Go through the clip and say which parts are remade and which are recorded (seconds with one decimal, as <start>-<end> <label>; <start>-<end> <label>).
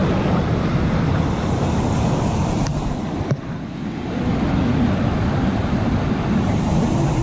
0.0-7.2 recorded